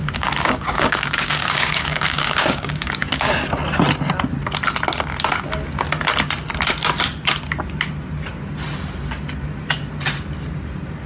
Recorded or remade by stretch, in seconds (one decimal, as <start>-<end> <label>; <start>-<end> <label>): 0.0-3.3 remade; 3.3-11.1 recorded